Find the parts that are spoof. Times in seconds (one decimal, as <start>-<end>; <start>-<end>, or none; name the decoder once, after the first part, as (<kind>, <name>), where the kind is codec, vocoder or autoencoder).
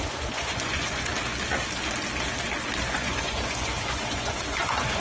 0.0-1.1 (vocoder, Vocos); 2.9-5.0